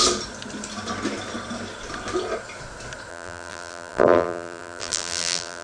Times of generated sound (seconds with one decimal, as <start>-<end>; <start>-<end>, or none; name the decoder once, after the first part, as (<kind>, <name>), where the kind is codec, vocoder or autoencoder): 3.1-5.6 (vocoder, BigVGAN v2)